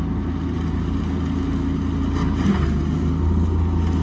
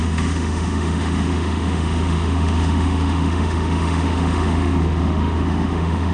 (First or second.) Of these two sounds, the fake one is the second